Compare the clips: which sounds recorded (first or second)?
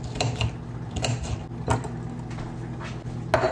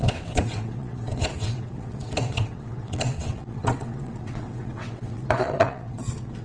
first